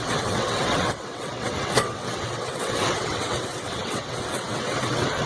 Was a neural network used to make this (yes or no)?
yes